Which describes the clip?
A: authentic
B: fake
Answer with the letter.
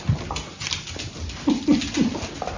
A